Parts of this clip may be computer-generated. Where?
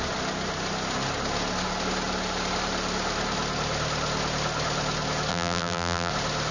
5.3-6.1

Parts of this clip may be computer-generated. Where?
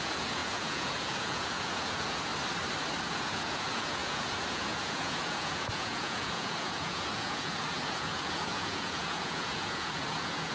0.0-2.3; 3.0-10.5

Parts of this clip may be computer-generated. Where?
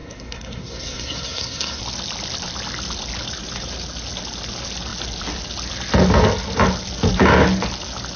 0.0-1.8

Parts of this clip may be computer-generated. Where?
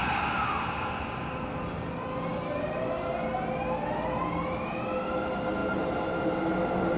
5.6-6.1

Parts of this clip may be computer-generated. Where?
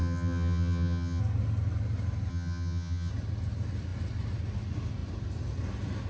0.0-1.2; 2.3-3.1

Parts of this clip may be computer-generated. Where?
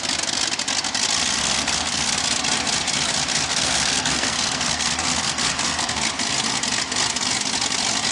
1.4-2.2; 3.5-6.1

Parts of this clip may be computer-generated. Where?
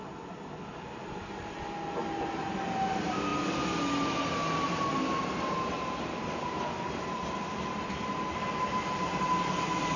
none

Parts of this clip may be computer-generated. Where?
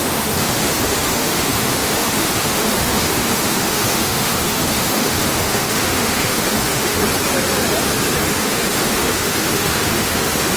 0.0-7.0; 8.2-10.6